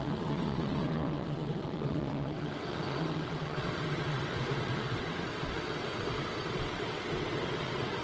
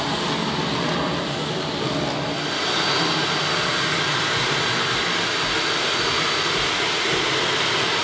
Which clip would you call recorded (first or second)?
second